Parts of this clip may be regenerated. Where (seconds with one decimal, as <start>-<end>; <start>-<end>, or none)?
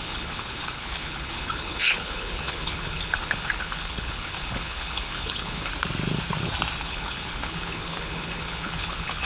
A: 0.0-5.7; 6.8-9.3